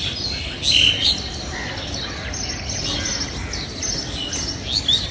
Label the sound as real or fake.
real